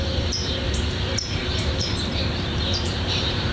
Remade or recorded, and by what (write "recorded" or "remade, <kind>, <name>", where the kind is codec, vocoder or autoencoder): remade, vocoder, BigVGAN v2